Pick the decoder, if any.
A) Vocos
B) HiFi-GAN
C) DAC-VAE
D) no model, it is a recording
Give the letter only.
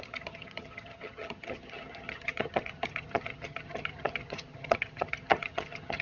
B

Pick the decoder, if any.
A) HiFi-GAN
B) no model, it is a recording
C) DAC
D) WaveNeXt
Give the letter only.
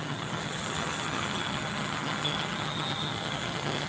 A